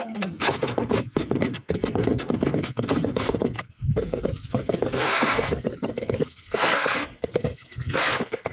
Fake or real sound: fake